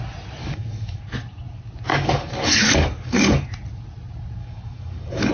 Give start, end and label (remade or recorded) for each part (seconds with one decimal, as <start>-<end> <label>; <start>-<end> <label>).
0.0-0.4 recorded; 0.4-1.0 remade; 1.0-1.9 recorded; 1.9-3.5 remade; 3.5-4.4 recorded; 4.4-5.3 remade